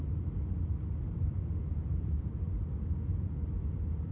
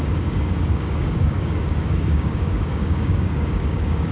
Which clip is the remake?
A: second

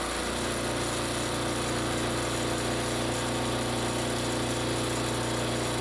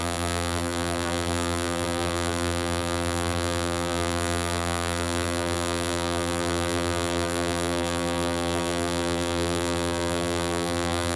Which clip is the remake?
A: second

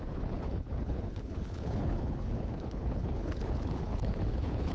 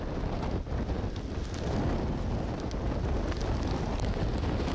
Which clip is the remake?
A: first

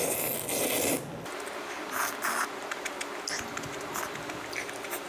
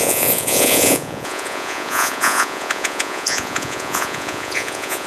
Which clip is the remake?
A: second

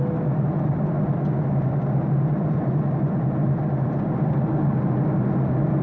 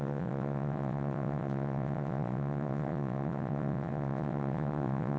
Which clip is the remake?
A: second